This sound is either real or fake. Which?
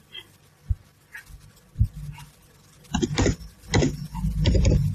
real